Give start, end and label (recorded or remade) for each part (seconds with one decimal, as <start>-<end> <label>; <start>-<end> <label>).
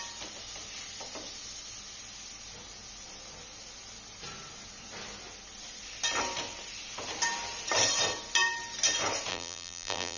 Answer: 0.0-9.3 recorded; 9.3-10.2 remade